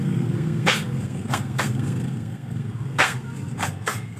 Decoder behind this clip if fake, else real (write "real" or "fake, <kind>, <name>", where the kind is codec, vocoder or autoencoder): fake, codec, SNAC